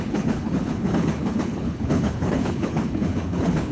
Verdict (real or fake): fake